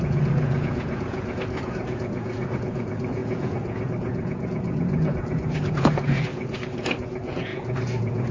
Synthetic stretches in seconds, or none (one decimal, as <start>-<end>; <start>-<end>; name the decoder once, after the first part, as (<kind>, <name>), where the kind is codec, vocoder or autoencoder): 0.0-8.3 (vocoder, Vocos)